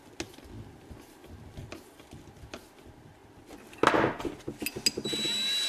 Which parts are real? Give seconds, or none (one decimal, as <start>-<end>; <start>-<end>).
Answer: 0.0-5.7

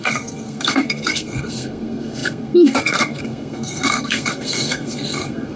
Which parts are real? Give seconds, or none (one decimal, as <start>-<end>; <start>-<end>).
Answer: none

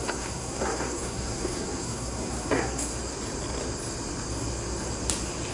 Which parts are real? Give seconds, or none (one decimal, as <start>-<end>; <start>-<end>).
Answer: 2.9-5.5

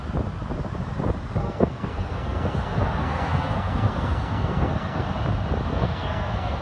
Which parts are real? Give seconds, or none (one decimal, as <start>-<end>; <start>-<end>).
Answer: 0.0-1.4; 5.1-5.7

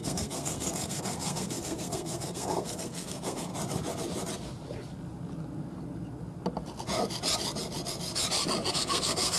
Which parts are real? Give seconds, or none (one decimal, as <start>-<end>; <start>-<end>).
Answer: 3.5-8.7

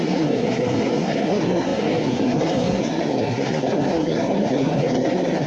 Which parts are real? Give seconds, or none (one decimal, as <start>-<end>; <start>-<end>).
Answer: none

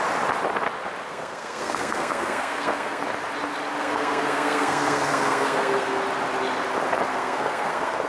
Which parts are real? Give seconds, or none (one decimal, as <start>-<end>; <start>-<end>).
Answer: 0.0-1.0; 3.0-3.8; 6.0-7.1